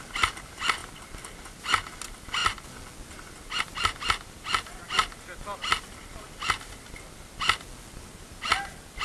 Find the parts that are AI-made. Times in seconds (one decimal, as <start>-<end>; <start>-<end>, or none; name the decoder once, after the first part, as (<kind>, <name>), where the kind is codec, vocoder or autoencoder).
none